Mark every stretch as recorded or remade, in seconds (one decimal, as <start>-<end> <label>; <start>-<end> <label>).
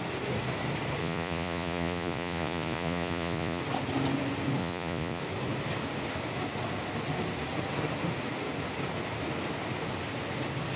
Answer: 0.0-1.0 recorded; 1.0-3.6 remade; 3.6-4.6 recorded; 4.6-5.2 remade; 5.2-10.8 recorded